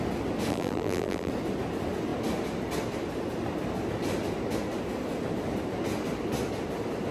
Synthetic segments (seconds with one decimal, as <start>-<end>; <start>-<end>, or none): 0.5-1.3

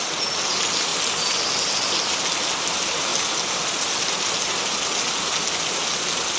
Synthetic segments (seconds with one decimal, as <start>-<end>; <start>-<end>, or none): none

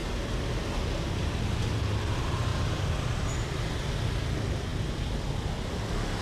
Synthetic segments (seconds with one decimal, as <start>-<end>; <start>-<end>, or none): 2.5-3.9

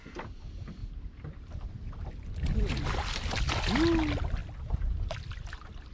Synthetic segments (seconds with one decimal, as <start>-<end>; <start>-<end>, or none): 0.8-3.5; 4.4-5.2

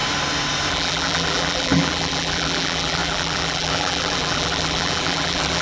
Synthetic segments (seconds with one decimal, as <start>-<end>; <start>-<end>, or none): 0.7-5.6